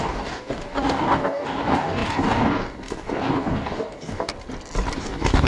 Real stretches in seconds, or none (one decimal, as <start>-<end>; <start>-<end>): 4.3-5.0